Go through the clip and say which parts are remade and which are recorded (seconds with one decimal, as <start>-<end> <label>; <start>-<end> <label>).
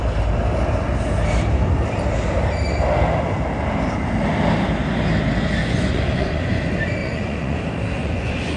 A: 0.0-5.6 recorded; 5.6-6.6 remade; 6.6-7.0 recorded; 7.0-7.6 remade; 7.6-8.0 recorded; 8.0-8.6 remade